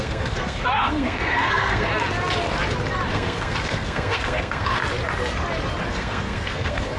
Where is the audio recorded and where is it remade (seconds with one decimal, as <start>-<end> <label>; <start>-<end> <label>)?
0.0-1.9 remade; 1.9-3.1 recorded; 3.1-4.8 remade; 4.8-5.9 recorded; 5.9-7.0 remade